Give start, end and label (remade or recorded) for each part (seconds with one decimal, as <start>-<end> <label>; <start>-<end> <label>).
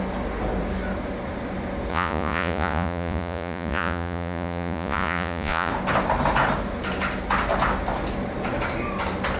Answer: 0.0-1.9 recorded; 1.9-5.7 remade; 5.7-9.4 recorded